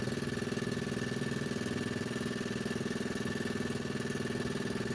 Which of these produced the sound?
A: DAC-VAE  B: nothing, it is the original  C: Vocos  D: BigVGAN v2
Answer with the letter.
B